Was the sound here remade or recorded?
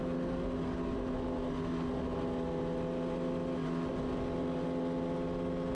recorded